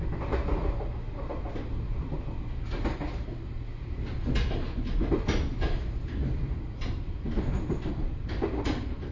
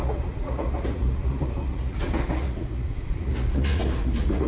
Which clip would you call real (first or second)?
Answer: first